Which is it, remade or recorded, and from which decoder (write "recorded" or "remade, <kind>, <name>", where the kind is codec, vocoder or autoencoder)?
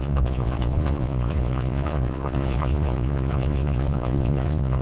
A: remade, vocoder, Vocos